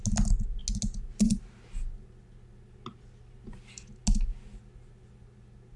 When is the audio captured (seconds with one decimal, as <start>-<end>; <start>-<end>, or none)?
0.0-5.8